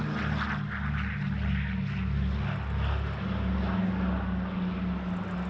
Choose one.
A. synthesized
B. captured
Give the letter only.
B